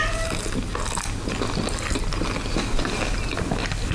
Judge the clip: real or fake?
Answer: real